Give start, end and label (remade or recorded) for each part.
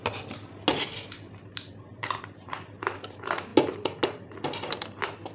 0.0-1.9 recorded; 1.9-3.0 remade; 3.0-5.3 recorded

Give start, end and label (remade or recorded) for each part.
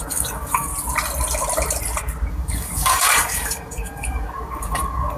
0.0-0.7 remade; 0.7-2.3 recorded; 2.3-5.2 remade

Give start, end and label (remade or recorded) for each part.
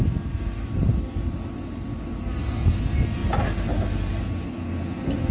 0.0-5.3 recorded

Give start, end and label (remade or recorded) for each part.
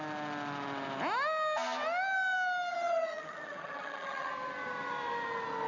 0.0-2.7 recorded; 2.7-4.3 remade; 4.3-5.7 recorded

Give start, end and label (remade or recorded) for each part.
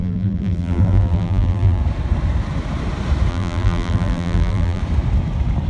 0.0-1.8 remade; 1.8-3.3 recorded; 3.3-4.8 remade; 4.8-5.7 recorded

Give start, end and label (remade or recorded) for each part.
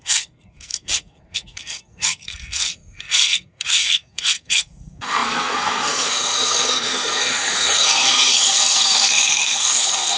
0.0-10.2 remade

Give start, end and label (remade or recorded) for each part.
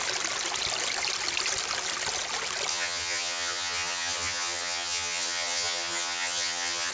0.0-2.7 recorded; 2.7-6.9 remade